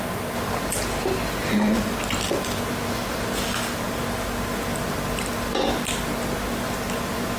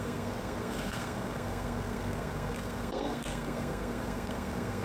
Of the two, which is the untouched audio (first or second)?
first